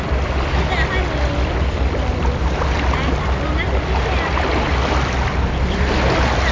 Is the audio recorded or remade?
recorded